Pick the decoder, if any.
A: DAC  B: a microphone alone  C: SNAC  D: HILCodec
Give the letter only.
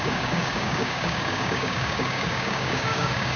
A